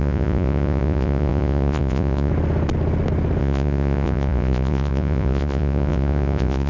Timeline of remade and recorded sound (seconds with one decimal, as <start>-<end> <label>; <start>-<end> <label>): 0.0-2.3 remade; 2.3-3.4 recorded; 3.4-6.7 remade